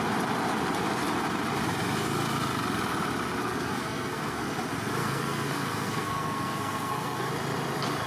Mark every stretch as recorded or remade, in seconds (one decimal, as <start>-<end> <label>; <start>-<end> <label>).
0.0-3.4 recorded; 3.4-4.5 remade; 4.5-5.0 recorded; 5.0-7.3 remade; 7.3-8.1 recorded